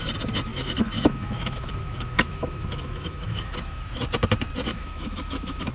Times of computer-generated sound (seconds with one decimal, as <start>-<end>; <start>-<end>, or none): 0.5-3.9; 4.7-5.7